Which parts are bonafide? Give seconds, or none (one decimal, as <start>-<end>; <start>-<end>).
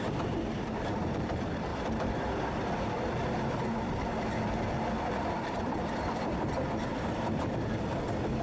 1.7-2.8; 4.1-5.1